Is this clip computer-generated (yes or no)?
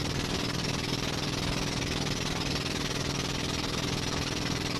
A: yes